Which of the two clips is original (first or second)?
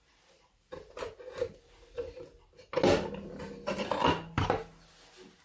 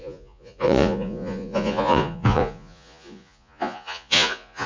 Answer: first